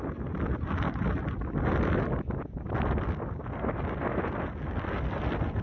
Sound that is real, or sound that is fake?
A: real